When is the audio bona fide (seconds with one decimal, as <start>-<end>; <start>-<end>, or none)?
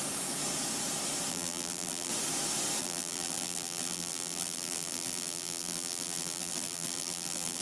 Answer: 0.0-1.3; 2.1-2.8